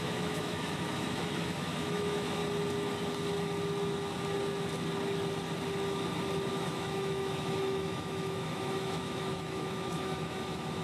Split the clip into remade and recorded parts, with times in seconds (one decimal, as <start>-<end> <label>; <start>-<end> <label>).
0.0-2.4 remade; 2.4-6.5 recorded; 6.5-10.8 remade